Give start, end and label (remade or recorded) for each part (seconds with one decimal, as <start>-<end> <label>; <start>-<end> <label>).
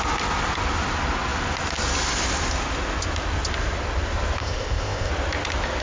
0.0-4.4 recorded; 4.4-5.1 remade; 5.1-5.8 recorded